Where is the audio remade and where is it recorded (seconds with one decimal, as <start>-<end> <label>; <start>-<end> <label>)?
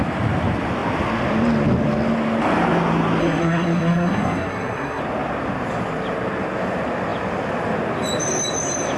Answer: 0.0-3.2 recorded; 3.2-5.0 remade; 5.0-9.0 recorded